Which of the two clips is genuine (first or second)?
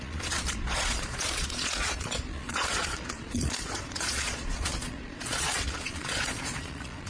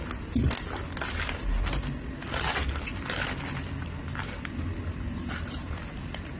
second